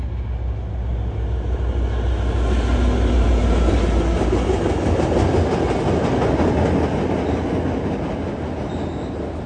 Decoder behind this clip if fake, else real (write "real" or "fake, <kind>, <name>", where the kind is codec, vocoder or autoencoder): real